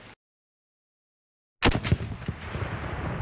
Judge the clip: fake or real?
real